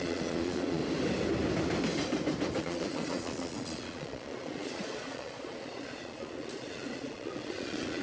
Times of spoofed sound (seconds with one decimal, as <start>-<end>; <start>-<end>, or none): 0.0-0.8; 2.6-8.0